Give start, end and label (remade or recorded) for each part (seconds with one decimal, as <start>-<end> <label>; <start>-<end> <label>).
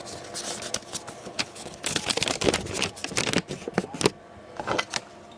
0.0-1.2 recorded; 1.2-2.0 remade; 2.0-5.4 recorded